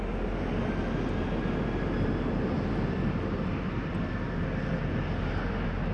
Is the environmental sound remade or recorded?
recorded